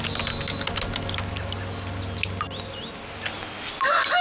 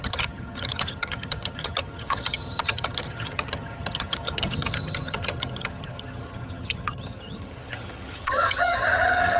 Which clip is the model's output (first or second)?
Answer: second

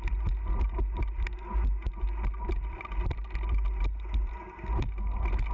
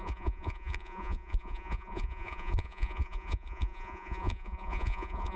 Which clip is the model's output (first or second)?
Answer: second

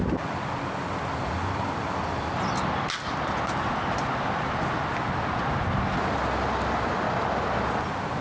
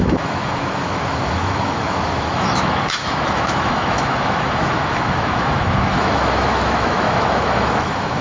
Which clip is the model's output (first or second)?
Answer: second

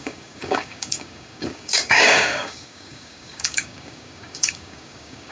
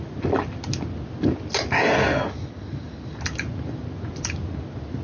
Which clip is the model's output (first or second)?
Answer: first